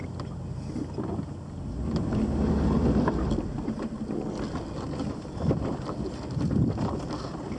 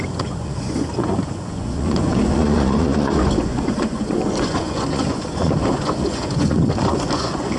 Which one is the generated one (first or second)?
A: second